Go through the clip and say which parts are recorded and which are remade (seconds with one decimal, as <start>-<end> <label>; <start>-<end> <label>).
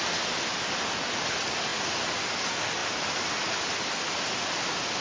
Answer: 0.0-5.0 recorded